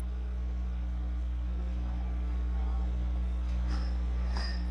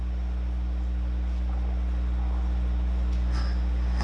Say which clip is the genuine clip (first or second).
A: second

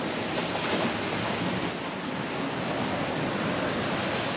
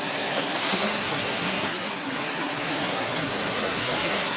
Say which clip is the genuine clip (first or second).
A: first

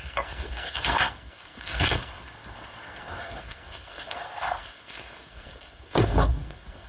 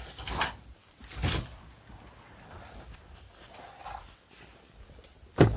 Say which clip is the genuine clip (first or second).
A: second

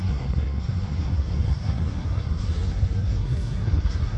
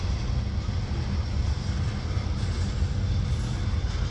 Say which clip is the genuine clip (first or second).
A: second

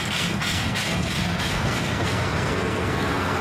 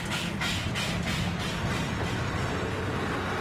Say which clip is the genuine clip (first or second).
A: second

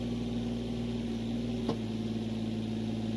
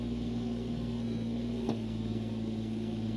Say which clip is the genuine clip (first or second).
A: first